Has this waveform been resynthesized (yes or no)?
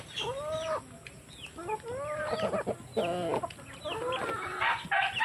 no